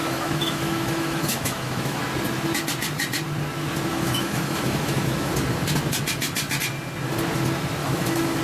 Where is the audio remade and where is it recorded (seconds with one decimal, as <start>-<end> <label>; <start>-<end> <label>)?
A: 0.0-2.0 remade; 2.0-3.9 recorded; 3.9-5.3 remade; 5.3-7.8 recorded; 7.8-8.4 remade